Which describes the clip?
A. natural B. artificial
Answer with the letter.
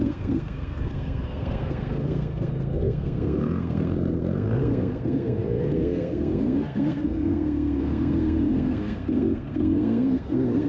B